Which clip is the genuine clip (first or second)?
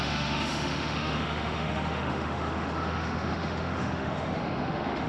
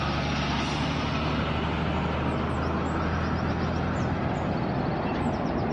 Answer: second